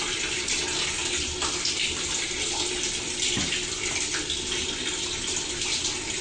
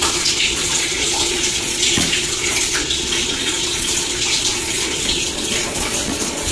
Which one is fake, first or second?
second